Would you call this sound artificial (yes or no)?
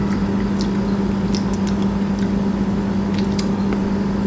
no